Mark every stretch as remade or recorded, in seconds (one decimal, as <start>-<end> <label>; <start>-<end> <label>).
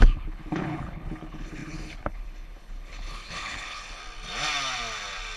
0.0-4.0 remade; 4.0-5.4 recorded